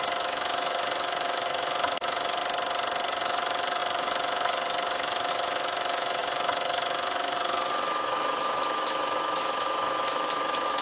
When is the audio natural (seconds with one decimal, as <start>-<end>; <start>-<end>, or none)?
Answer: 2.4-3.2